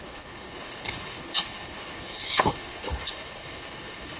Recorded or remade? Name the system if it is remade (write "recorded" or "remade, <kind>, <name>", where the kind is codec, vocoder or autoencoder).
remade, codec, HILCodec